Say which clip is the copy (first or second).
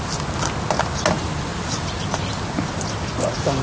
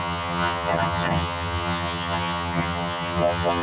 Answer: second